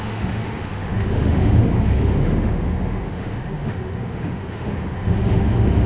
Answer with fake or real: fake